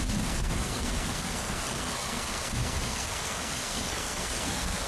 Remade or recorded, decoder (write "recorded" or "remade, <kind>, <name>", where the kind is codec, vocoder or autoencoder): remade, codec, SNAC